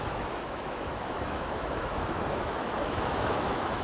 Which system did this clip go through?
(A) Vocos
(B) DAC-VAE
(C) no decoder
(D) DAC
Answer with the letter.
B